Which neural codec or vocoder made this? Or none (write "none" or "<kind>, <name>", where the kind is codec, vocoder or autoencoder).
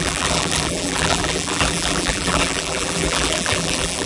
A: vocoder, BigVGAN v2